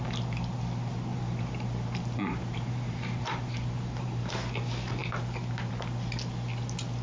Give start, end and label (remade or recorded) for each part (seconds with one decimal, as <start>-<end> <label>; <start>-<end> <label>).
0.0-1.1 recorded; 1.1-4.3 remade; 4.3-7.0 recorded